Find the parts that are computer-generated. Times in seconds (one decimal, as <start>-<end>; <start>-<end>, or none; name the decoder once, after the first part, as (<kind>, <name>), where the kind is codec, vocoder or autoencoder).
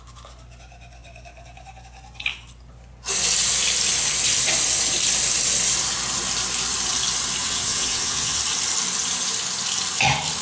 7.4-8.4 (vocoder, WaveNeXt)